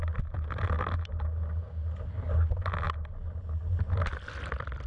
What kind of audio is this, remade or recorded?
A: recorded